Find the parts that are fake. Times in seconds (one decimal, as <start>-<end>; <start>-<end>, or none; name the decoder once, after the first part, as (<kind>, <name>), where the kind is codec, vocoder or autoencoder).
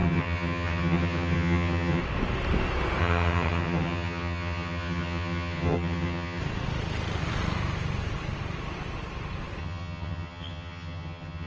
0.0-2.0 (vocoder, HiFi-GAN); 3.0-6.4; 9.6-11.5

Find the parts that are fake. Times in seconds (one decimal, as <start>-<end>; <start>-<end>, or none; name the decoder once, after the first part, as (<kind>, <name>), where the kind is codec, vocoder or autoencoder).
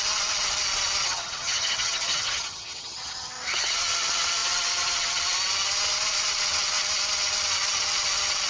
1.0-3.3 (vocoder, HiFi-GAN)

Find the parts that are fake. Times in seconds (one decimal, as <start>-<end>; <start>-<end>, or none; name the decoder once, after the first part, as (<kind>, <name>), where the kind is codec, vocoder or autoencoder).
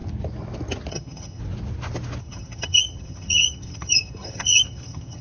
0.9-1.4 (vocoder, HiFi-GAN); 2.2-5.2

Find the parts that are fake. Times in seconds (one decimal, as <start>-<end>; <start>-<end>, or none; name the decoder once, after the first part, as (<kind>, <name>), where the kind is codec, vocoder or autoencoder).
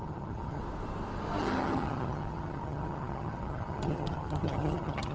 0.0-0.6 (vocoder, HiFi-GAN); 1.4-5.1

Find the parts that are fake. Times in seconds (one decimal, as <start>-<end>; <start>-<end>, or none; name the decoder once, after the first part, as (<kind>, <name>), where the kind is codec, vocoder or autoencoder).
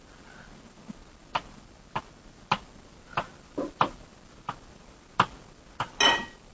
none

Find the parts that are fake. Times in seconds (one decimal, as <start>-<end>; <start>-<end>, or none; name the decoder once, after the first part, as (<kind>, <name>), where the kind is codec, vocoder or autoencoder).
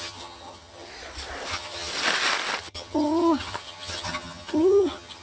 0.0-0.9 (vocoder, HiFi-GAN); 1.5-1.9; 2.6-5.2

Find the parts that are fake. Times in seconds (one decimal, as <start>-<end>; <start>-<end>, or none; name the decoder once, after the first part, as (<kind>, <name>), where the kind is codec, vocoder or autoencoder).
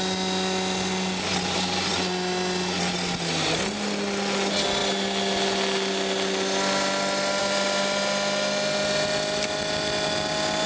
none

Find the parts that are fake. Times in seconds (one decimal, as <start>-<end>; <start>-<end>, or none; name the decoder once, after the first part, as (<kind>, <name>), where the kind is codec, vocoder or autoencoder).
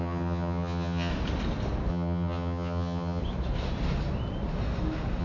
0.0-1.1 (vocoder, HiFi-GAN); 1.9-3.2